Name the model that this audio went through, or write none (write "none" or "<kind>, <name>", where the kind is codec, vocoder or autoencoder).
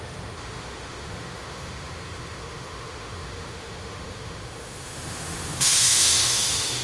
autoencoder, DAC-VAE